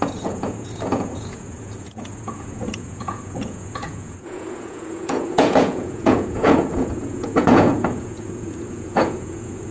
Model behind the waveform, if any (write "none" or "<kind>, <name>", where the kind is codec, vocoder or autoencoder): vocoder, Vocos